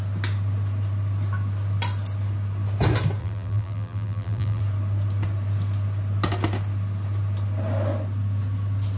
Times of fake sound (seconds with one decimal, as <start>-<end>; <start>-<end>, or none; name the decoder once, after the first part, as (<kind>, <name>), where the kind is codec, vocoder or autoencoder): 3.2-4.6 (vocoder, BigVGAN v2)